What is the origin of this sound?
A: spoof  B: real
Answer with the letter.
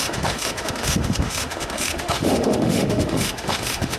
A